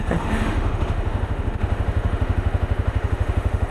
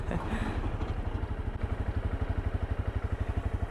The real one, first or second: second